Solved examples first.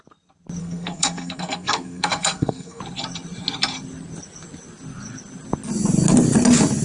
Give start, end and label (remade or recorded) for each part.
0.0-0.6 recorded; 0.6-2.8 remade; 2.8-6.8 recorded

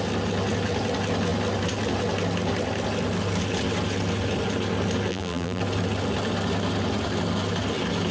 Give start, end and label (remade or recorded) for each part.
0.0-5.1 recorded; 5.1-5.6 remade; 5.6-8.1 recorded

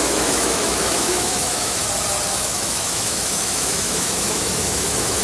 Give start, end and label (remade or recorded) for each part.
0.0-1.8 remade; 1.8-2.4 recorded; 2.4-5.2 remade

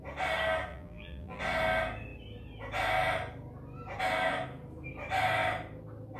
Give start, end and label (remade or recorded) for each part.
0.0-0.7 recorded; 0.7-1.4 remade; 1.4-6.2 recorded

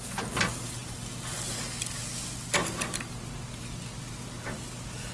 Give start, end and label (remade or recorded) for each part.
0.0-5.1 recorded

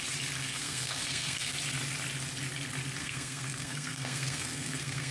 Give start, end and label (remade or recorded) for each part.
0.0-0.4 recorded; 0.4-1.5 remade; 1.5-3.0 recorded; 3.0-5.1 remade

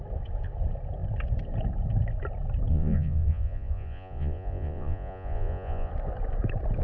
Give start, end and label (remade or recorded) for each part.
0.0-2.7 recorded; 2.7-5.9 remade; 5.9-6.8 recorded

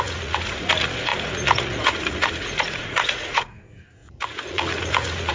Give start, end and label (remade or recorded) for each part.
0.0-5.3 remade